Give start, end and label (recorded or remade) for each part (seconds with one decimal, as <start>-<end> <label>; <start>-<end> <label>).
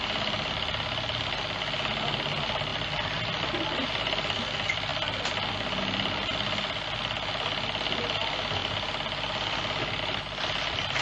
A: 0.0-11.0 recorded